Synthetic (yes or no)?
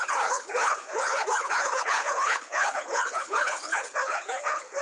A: yes